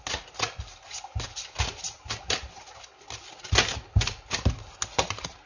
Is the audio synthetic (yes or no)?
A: no